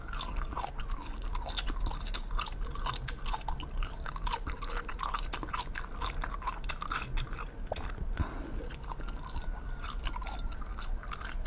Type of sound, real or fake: real